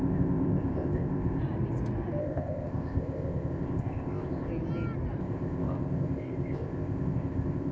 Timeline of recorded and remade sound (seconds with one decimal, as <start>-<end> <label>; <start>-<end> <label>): 0.0-1.4 remade; 1.4-2.2 recorded; 2.2-4.5 remade; 4.5-5.2 recorded; 5.2-7.7 remade